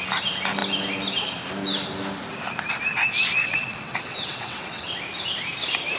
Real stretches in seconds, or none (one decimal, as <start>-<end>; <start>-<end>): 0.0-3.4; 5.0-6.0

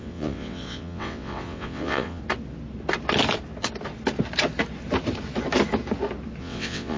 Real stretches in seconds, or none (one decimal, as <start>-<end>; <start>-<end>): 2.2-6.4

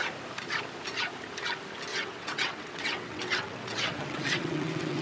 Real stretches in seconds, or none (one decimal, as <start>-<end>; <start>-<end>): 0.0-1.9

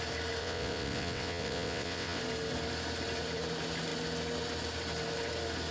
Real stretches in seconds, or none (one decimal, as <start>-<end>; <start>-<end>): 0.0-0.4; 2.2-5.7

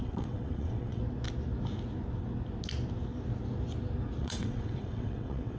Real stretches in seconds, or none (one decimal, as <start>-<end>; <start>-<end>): 1.0-4.2

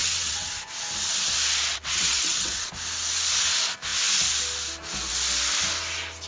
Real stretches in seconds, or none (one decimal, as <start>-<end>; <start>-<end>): 0.5-1.7; 2.7-6.3

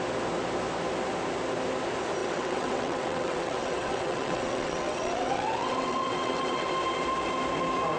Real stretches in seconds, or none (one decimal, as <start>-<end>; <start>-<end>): 0.0-2.2; 6.7-8.0